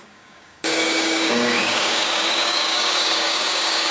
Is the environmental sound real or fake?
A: fake